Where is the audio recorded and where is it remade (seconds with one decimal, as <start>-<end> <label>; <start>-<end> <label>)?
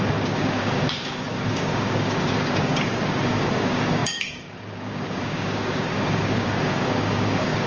0.0-7.7 remade